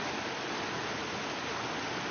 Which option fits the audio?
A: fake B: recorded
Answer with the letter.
B